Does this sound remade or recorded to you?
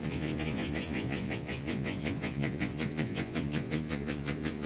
remade